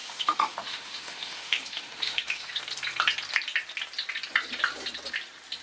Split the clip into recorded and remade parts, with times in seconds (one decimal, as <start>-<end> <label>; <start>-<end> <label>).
0.0-2.6 remade; 2.6-5.6 recorded